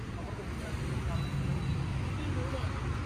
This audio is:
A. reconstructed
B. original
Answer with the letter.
B